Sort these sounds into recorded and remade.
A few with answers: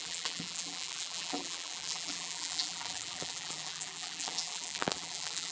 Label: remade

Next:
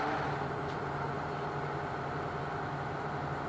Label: recorded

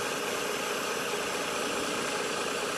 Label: recorded